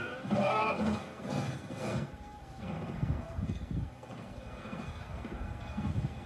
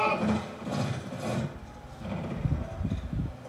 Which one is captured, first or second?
second